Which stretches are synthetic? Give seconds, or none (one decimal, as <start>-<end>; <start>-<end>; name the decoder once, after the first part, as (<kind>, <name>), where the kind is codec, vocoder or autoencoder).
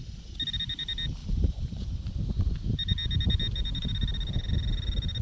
1.2-2.5 (vocoder, BigVGAN v2)